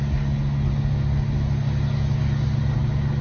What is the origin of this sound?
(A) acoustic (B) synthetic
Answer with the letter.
A